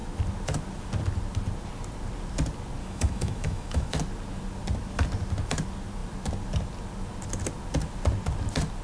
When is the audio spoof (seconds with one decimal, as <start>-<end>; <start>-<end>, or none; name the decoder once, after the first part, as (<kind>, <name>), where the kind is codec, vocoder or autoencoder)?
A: 2.8-3.9 (autoencoder, DAC-VAE)